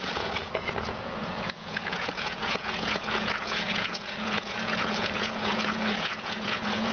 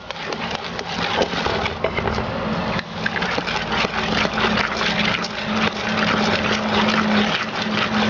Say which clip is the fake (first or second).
first